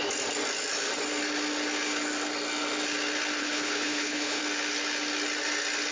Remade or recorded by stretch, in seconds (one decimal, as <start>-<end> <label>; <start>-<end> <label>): 0.0-3.4 recorded; 3.4-4.4 remade; 4.4-5.9 recorded